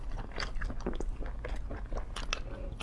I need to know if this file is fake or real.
real